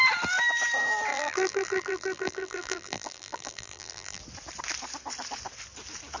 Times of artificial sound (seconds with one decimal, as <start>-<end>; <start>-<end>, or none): 1.1-4.2